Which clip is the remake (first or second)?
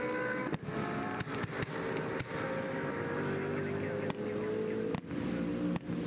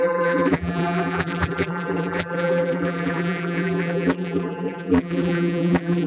second